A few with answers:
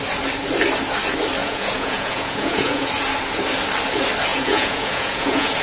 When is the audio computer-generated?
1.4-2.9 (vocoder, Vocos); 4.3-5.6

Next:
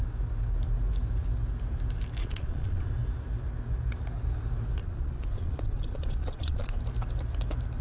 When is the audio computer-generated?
2.2-2.9 (vocoder, Vocos); 4.8-6.8

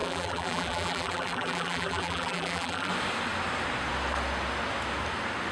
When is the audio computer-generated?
0.0-2.9 (vocoder, BigVGAN v2)

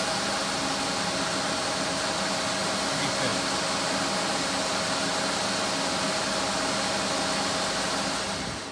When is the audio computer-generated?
none

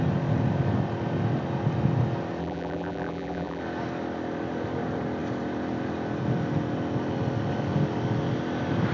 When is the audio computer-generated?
2.4-3.6 (vocoder, BigVGAN v2)